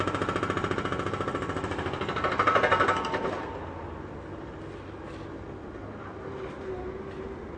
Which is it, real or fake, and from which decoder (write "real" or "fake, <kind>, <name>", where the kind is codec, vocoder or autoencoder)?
real